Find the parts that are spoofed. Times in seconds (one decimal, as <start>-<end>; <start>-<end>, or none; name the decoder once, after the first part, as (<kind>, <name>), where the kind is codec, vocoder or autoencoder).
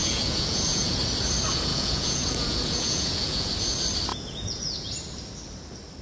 0.0-1.0 (vocoder, Vocos); 1.7-3.5; 4.1-4.9